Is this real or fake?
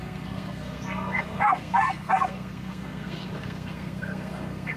fake